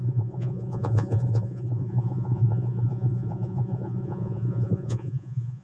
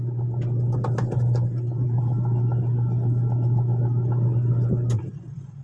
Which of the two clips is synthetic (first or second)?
first